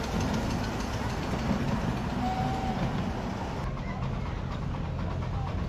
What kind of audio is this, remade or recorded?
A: recorded